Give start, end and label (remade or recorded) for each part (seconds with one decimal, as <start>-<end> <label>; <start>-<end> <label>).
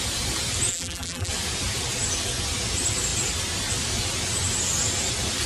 0.0-0.7 recorded; 0.7-1.3 remade; 1.3-5.5 recorded